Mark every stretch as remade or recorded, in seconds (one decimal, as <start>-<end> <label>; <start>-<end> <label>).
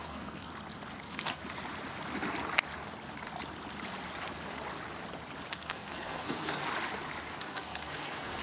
0.0-0.5 remade; 0.5-1.0 recorded; 1.0-1.4 remade; 1.4-5.5 recorded; 5.5-6.6 remade; 6.6-7.4 recorded; 7.4-8.4 remade